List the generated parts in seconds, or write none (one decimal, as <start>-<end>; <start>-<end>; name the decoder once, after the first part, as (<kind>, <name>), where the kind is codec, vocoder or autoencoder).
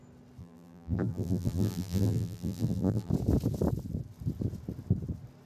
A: 0.4-3.1 (vocoder, BigVGAN v2)